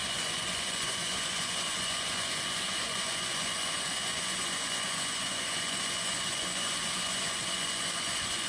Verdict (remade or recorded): remade